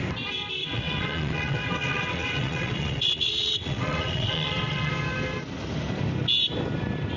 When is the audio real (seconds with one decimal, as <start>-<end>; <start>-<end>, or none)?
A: 0.0-0.6; 4.9-7.2